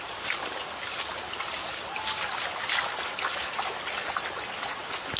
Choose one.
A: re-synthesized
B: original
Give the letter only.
B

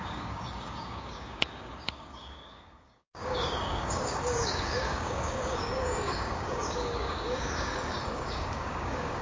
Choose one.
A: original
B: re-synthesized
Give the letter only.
B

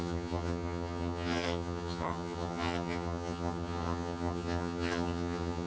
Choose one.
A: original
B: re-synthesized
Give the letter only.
B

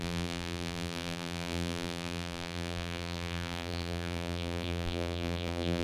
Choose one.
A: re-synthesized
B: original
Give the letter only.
A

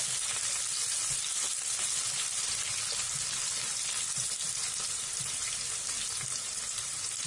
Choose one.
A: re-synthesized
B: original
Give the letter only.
B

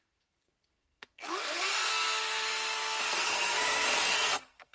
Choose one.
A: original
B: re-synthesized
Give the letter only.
B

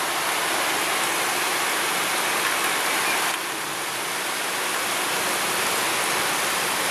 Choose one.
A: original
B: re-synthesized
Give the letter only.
A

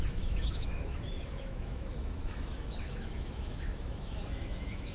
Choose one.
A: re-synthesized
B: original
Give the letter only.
A